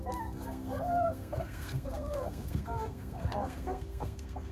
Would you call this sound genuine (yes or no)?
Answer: no